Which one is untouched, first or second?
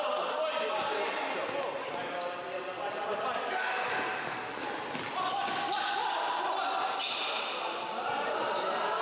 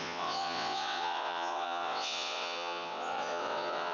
first